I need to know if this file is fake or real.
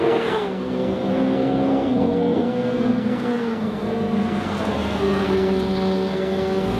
fake